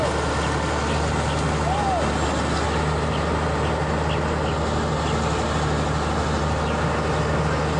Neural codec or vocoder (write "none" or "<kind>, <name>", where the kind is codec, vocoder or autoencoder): none